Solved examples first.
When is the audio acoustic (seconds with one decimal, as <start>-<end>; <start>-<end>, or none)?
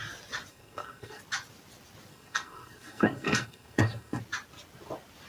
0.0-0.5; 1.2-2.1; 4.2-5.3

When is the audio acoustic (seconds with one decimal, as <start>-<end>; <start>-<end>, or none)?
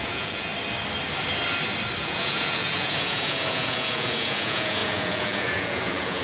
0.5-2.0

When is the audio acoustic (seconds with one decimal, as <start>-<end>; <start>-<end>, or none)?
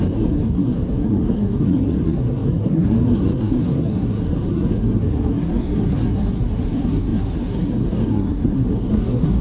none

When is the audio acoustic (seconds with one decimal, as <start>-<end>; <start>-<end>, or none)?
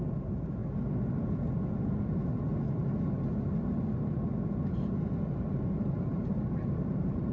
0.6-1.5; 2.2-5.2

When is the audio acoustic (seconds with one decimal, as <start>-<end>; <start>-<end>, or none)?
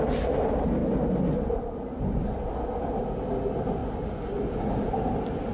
0.0-5.5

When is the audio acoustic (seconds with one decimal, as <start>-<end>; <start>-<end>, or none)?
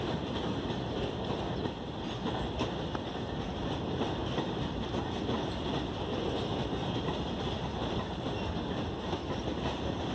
0.0-4.2; 6.3-10.1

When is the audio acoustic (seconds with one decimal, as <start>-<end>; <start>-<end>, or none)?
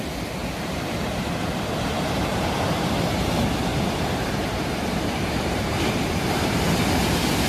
0.0-0.4; 3.3-3.7; 6.6-7.5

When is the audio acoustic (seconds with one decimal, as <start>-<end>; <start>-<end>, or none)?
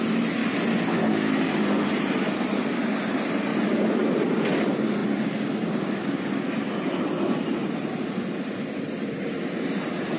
0.4-1.1